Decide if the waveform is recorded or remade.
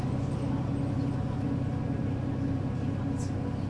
recorded